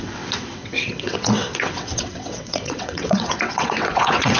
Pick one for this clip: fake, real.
fake